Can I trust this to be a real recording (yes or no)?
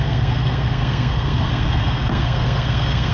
no